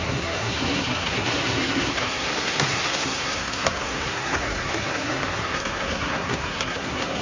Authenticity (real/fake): fake